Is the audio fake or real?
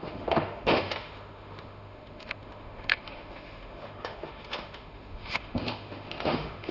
fake